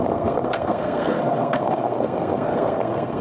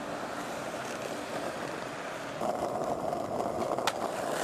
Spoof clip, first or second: first